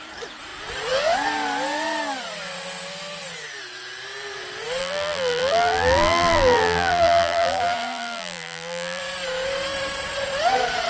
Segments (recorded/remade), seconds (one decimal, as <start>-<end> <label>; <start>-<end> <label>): 0.0-4.8 recorded; 4.8-9.0 remade; 9.0-10.9 recorded